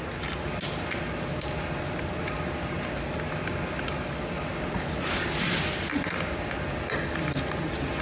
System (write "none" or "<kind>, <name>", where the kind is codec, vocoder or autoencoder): none